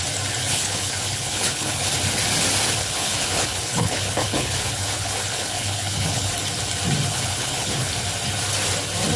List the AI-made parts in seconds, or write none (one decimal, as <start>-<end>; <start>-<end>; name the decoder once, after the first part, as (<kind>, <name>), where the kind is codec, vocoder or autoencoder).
0.4-1.9 (codec, HILCodec); 2.8-6.3; 7.1-7.9